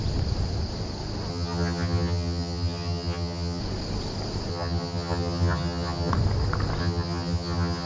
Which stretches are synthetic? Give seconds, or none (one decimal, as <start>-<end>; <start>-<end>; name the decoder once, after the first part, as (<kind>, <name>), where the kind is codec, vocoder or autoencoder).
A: 1.3-3.6 (vocoder, HiFi-GAN); 4.5-6.1; 6.8-7.9